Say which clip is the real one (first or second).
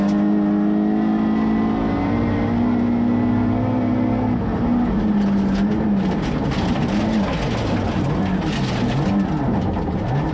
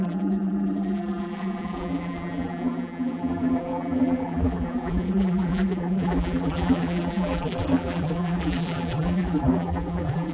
first